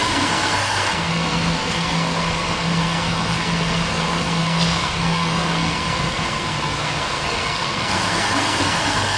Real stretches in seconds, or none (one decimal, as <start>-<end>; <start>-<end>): none